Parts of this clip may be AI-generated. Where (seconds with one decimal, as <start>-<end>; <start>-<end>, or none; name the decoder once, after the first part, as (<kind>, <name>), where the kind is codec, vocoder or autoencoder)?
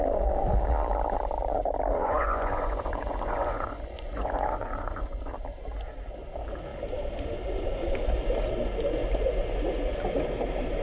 2.0-5.3 (vocoder, Vocos)